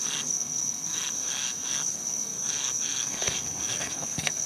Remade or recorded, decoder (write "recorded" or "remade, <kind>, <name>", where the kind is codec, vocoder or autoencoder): remade, codec, SNAC